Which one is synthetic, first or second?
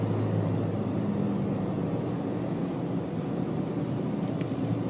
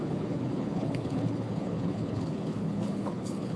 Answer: second